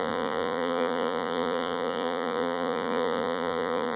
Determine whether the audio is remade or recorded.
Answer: remade